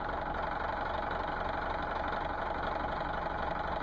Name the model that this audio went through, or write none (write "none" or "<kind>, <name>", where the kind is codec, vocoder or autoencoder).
none